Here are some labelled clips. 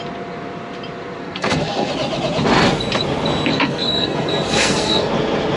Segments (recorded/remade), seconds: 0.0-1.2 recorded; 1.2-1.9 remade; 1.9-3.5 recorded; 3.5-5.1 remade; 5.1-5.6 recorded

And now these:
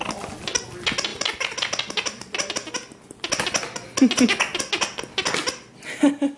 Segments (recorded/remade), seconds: 0.0-6.4 recorded

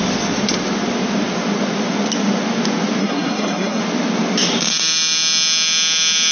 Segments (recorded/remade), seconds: 0.0-3.0 recorded; 3.0-3.8 remade; 3.8-6.3 recorded

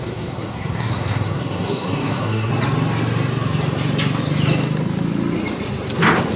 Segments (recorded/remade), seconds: 0.0-2.5 remade; 2.5-6.4 recorded

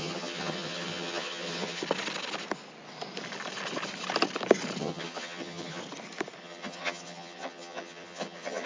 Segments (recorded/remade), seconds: 0.0-1.8 remade; 1.8-4.8 recorded; 4.8-5.8 remade; 5.8-6.4 recorded; 6.4-8.7 remade